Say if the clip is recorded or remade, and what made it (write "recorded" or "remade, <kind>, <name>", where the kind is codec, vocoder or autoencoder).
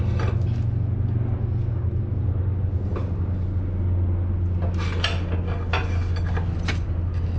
recorded